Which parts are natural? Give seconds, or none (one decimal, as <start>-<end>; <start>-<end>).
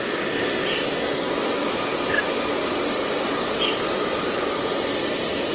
0.0-5.5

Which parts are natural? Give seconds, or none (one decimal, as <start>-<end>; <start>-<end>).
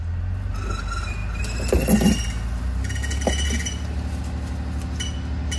0.0-5.6